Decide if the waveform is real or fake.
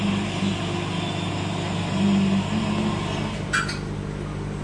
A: real